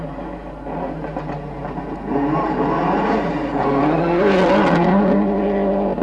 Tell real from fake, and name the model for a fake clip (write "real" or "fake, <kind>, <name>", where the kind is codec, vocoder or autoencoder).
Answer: real